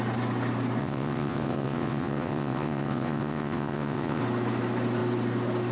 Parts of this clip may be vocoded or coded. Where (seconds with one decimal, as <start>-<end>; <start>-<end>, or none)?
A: 0.8-4.2